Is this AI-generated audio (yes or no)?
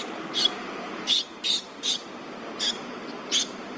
no